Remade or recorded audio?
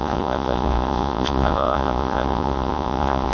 remade